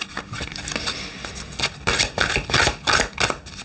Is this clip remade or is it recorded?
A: recorded